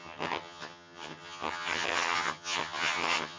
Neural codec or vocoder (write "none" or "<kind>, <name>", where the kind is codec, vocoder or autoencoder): vocoder, HiFi-GAN